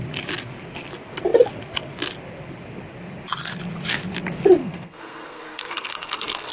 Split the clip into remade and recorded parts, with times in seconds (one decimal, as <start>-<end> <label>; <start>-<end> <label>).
0.0-4.6 recorded; 4.6-6.5 remade